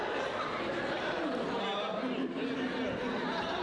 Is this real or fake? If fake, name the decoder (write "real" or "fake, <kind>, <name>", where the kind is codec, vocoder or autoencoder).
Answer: real